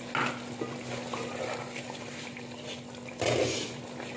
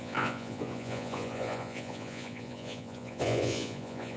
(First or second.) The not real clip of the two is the second